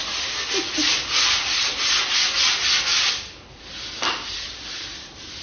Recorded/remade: recorded